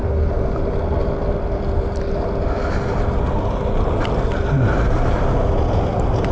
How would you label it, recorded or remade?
recorded